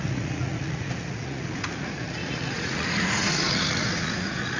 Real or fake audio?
fake